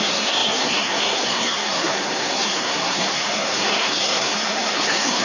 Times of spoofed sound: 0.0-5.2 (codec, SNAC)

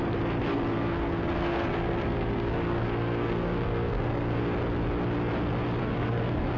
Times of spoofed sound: 0.4-4.4 (codec, SNAC); 5.8-6.6